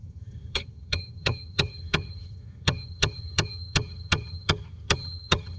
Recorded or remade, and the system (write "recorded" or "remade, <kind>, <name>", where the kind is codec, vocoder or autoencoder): remade, vocoder, HiFi-GAN